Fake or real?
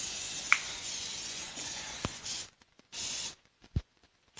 fake